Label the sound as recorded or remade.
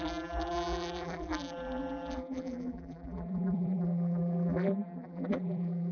remade